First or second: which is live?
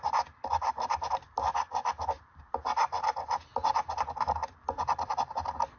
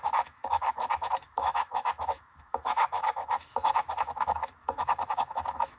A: first